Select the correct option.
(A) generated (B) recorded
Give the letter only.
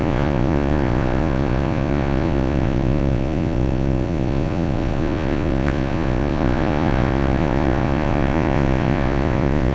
A